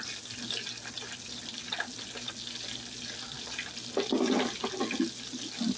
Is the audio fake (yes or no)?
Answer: no